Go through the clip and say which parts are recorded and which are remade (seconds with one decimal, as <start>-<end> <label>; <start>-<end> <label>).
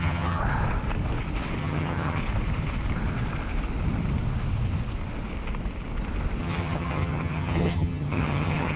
0.0-0.4 remade; 0.4-1.6 recorded; 1.6-2.2 remade; 2.2-6.4 recorded; 6.4-8.8 remade